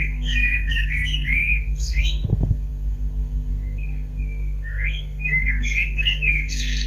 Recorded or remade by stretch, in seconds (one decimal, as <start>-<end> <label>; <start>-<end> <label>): 0.0-6.9 remade